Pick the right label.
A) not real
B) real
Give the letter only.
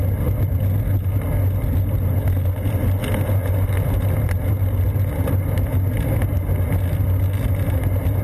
B